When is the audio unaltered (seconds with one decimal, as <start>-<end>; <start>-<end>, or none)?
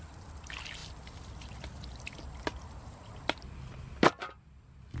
0.0-5.0